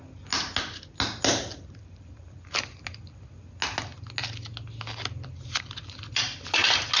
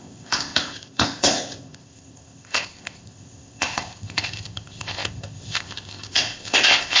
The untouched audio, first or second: first